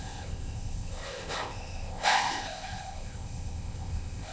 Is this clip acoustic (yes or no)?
no